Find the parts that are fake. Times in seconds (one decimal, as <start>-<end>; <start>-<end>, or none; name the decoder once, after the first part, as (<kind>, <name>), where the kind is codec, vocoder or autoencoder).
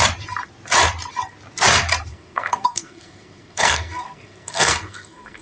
2.1-5.4 (codec, SNAC)